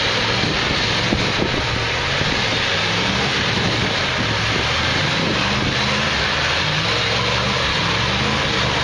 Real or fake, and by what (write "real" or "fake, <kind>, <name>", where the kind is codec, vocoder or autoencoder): real